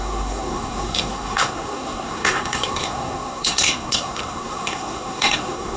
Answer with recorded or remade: remade